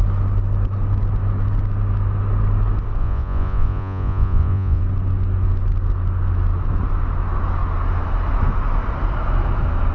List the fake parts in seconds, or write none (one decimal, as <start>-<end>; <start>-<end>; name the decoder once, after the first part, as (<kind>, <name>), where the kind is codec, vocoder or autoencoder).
3.0-4.8 (vocoder, Vocos)